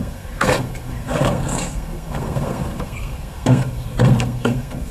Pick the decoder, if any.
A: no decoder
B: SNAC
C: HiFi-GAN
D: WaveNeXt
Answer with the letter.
B